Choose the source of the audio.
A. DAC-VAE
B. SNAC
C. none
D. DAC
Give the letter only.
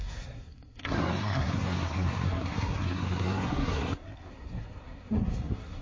B